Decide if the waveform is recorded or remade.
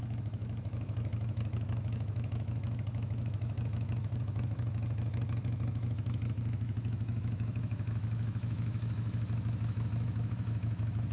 remade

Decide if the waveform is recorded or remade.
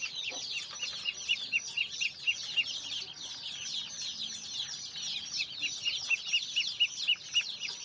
recorded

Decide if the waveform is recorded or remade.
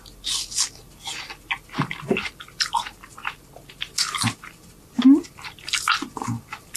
recorded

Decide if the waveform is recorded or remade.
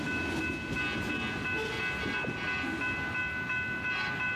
recorded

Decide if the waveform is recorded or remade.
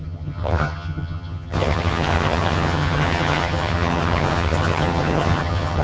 remade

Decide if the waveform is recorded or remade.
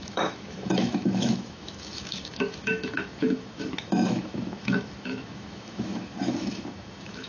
remade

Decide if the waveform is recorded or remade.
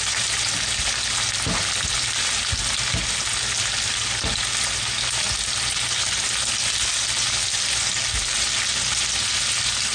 recorded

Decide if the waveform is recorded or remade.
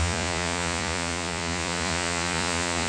remade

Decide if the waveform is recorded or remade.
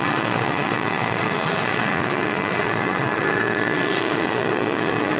remade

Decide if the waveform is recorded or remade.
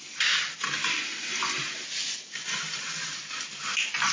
recorded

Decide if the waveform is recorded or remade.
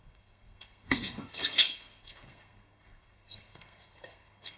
remade